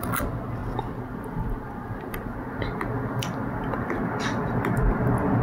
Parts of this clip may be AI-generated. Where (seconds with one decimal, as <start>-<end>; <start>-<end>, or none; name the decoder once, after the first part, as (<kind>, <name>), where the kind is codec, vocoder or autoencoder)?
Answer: none